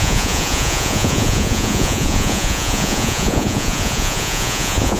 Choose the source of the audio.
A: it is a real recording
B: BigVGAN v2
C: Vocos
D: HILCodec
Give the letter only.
C